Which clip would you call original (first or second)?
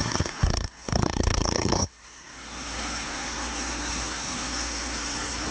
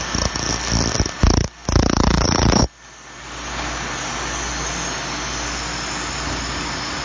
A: second